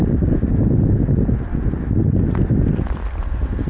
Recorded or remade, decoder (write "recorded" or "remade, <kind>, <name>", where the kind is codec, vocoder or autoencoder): recorded